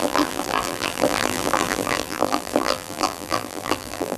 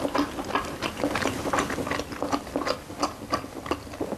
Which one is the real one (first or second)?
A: second